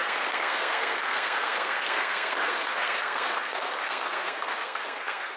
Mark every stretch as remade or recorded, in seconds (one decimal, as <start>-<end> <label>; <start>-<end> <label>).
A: 0.0-5.4 remade